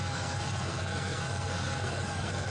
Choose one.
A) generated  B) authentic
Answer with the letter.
A